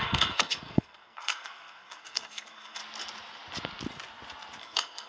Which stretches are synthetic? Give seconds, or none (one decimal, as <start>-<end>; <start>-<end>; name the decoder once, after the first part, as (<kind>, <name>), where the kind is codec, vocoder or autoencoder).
0.0-2.8 (codec, SNAC); 4.6-5.1